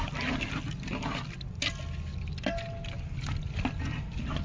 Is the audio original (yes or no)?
yes